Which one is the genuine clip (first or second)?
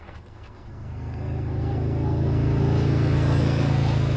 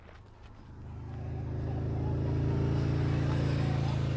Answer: second